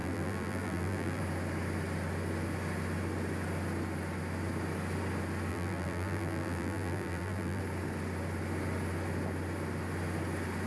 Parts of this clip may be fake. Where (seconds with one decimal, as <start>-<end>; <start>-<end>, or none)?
0.0-1.2; 5.5-7.6